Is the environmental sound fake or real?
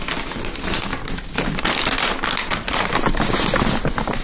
real